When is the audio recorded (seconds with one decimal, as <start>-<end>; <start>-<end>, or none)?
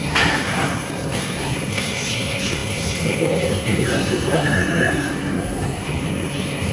none